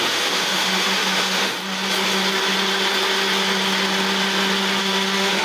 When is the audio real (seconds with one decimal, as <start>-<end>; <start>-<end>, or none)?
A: 1.6-4.8